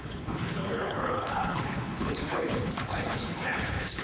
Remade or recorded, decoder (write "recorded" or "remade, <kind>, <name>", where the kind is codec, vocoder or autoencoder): remade, codec, HILCodec